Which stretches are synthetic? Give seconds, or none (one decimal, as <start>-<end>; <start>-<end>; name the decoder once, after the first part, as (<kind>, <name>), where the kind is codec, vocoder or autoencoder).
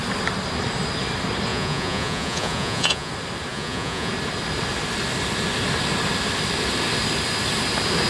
1.5-3.1 (vocoder, Vocos); 3.5-4.1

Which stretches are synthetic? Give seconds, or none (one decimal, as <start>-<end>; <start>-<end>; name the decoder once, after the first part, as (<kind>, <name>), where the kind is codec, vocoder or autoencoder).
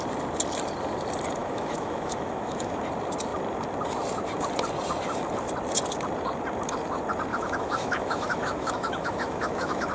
1.4-2.8 (autoencoder, DAC-VAE); 7.3-9.9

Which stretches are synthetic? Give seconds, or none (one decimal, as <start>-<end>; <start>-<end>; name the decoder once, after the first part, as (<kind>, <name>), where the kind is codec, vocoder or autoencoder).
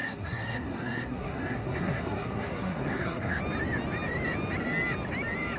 0.0-3.4 (codec, SNAC)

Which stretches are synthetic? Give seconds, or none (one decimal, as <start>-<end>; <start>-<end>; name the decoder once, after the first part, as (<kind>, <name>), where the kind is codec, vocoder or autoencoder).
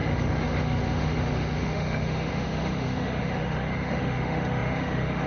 0.0-5.3 (autoencoder, DAC-VAE)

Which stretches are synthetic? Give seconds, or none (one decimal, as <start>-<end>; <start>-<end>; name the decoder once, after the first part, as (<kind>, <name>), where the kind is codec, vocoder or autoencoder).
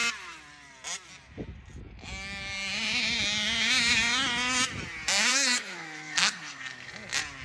5.3-6.9 (codec, SNAC)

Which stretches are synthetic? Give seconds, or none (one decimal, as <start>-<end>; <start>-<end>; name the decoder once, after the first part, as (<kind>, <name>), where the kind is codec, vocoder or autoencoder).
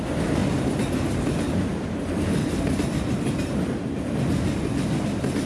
none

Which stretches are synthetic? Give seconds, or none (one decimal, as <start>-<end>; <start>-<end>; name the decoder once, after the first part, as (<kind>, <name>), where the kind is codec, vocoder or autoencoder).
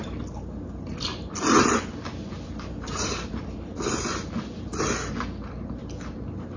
none